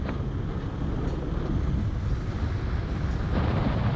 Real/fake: real